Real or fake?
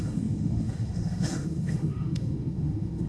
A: fake